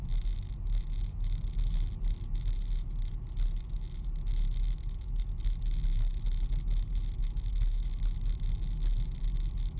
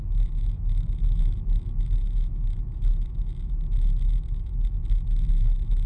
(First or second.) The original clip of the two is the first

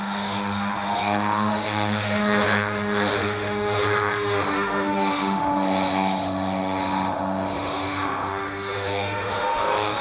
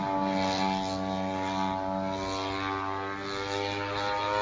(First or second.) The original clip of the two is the second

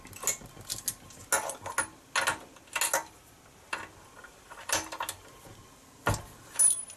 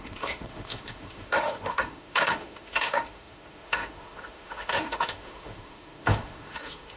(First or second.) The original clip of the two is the first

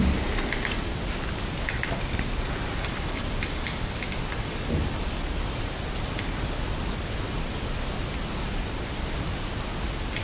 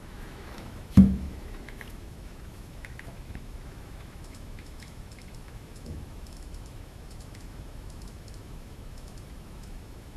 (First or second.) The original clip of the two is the first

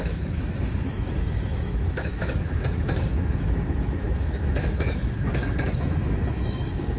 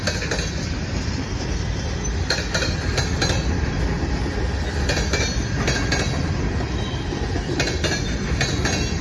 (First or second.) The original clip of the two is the second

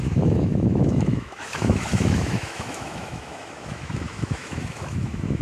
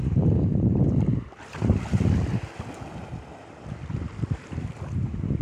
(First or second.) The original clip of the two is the second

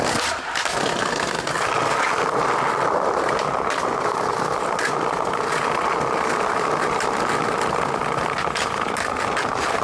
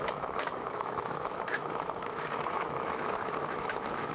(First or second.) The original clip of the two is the first